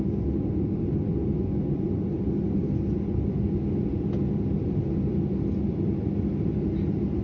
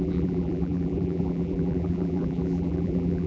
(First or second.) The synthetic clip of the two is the second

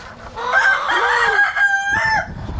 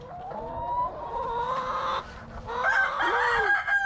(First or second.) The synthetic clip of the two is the first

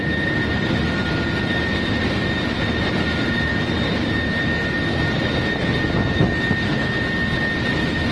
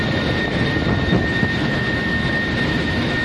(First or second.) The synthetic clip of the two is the second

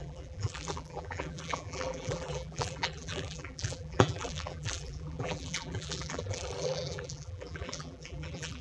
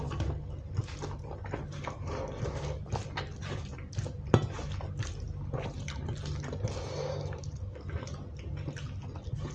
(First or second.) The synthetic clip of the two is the first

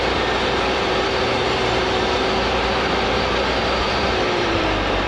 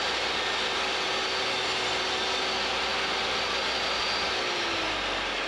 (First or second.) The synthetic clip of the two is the first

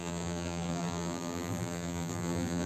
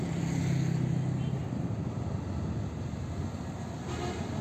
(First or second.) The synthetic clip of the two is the first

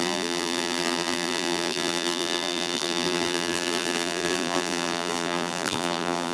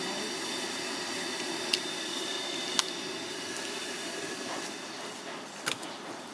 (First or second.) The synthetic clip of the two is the first